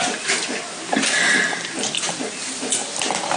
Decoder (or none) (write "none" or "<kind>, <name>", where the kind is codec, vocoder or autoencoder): none